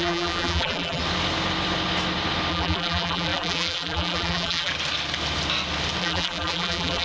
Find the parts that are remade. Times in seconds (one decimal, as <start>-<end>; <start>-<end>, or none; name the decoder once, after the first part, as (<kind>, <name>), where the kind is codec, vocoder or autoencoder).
0.0-1.0 (vocoder, BigVGAN v2); 2.5-4.7; 6.0-7.0